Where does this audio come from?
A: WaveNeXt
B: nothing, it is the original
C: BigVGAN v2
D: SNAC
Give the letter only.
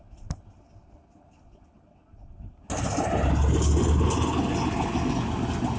B